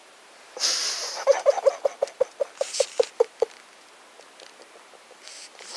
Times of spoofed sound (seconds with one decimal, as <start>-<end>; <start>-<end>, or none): none